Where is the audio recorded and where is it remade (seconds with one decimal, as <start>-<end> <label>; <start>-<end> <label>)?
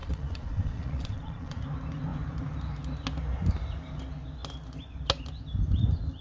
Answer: 0.0-1.6 remade; 1.6-6.2 recorded